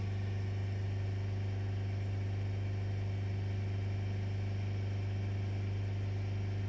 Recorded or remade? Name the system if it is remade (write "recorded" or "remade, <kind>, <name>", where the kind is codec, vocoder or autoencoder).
recorded